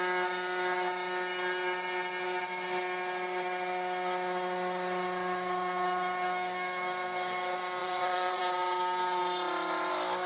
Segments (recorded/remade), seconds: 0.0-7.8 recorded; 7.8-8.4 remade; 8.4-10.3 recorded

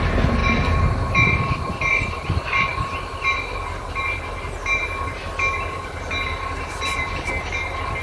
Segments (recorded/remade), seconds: 0.0-8.0 recorded

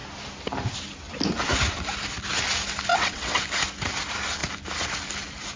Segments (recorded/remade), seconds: 0.0-2.9 recorded; 2.9-3.4 remade; 3.4-5.6 recorded

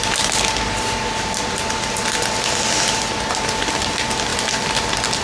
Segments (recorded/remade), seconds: 0.0-5.2 recorded

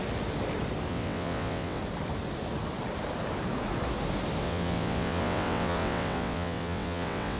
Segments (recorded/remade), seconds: 0.0-0.9 recorded; 0.9-1.8 remade; 1.8-4.4 recorded; 4.4-7.4 remade

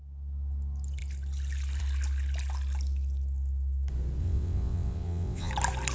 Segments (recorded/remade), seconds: 0.0-4.2 recorded; 4.2-5.5 remade; 5.5-5.9 recorded